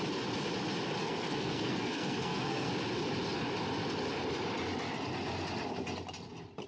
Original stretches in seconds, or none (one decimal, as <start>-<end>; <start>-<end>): 0.0-1.0; 2.7-6.7